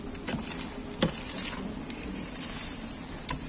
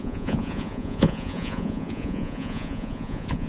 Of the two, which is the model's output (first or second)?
second